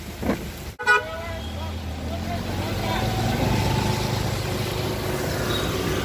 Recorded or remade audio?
recorded